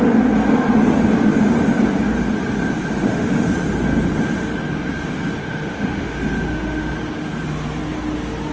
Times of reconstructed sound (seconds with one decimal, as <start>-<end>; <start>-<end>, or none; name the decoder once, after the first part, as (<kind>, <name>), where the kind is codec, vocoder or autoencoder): 3.0-3.5 (autoencoder, DAC-VAE); 5.4-6.9